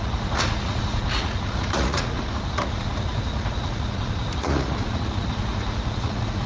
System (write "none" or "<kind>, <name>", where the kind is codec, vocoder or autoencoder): vocoder, Vocos